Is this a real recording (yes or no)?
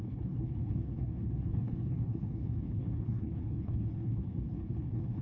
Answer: no